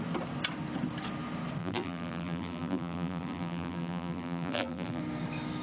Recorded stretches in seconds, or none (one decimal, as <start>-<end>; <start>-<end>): 0.0-1.6; 5.0-5.6